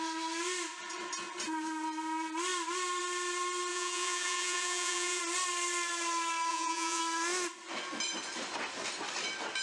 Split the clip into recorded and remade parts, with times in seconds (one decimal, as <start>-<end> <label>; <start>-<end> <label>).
0.0-3.7 recorded; 3.7-5.2 remade; 5.2-6.5 recorded; 6.5-7.0 remade; 7.0-9.6 recorded

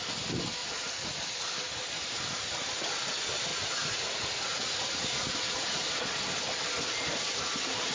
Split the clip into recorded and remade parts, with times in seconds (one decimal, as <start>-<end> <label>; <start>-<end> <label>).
0.0-0.6 recorded; 0.6-1.1 remade; 1.1-3.5 recorded; 3.5-6.0 remade; 6.0-7.9 recorded

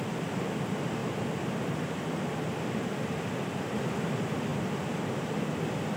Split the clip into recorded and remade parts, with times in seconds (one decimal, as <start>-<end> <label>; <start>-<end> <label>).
0.0-1.0 recorded; 1.0-2.0 remade; 2.0-6.0 recorded

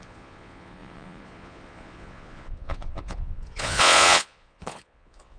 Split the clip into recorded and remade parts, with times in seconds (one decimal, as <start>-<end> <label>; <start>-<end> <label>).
0.0-5.4 remade